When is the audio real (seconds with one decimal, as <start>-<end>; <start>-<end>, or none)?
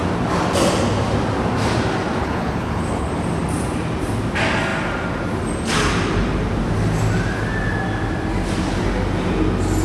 0.0-2.2; 3.1-9.8